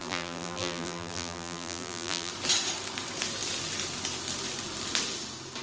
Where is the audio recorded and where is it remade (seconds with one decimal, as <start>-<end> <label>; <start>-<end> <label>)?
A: 0.0-2.3 remade; 2.3-5.6 recorded